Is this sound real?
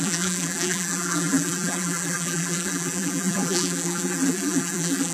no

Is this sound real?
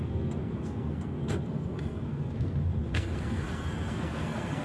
no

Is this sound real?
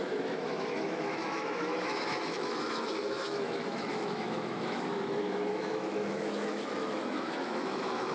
no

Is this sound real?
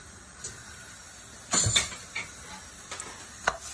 yes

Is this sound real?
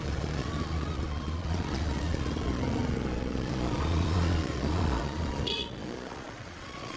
no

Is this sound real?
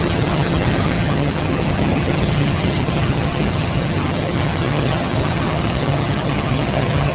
no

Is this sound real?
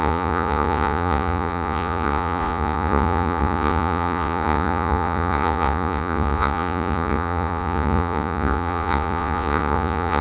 no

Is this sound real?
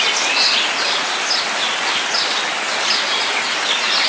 yes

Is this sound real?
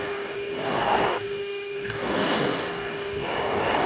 no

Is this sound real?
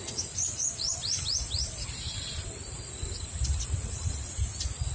yes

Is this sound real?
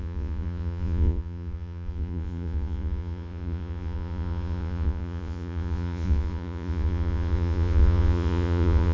no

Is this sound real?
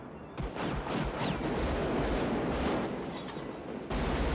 yes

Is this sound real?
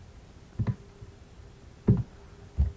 yes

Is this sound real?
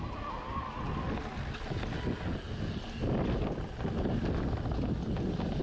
yes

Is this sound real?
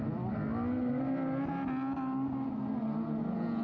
yes